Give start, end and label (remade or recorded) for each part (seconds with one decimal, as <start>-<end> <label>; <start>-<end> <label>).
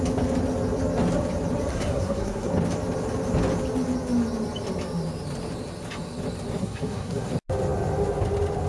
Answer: 0.0-1.7 recorded; 1.7-2.5 remade; 2.5-6.6 recorded; 6.6-7.3 remade; 7.3-8.7 recorded